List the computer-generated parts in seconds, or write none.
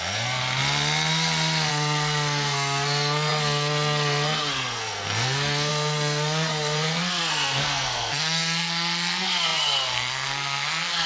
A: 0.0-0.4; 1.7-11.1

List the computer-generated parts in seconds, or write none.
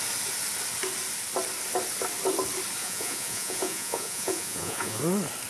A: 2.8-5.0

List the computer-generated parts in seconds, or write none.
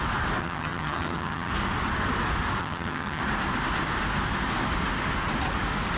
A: 0.4-1.5; 2.6-3.2